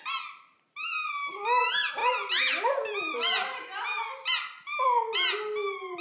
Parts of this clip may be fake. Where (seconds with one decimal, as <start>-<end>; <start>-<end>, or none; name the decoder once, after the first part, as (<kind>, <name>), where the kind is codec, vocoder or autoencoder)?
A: none